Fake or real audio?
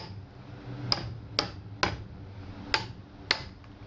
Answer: real